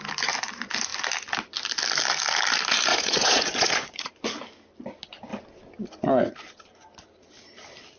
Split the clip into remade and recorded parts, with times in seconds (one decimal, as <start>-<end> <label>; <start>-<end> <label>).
0.0-2.9 recorded; 2.9-4.1 remade; 4.1-8.0 recorded